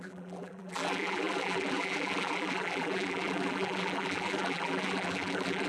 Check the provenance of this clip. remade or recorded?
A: remade